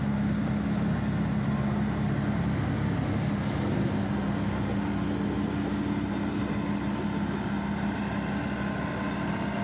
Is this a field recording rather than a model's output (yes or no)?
yes